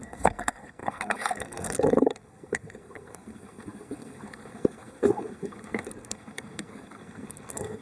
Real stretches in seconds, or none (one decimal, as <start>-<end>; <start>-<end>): none